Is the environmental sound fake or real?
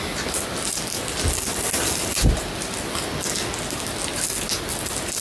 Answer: real